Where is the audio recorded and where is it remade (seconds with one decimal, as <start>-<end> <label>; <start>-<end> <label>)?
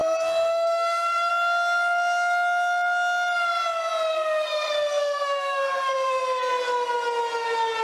0.0-1.3 remade; 1.3-4.1 recorded; 4.1-6.5 remade; 6.5-7.8 recorded